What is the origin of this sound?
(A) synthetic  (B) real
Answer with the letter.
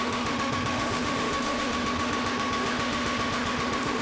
A